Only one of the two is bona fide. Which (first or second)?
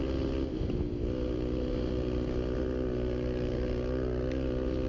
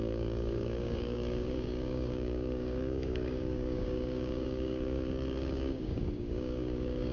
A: first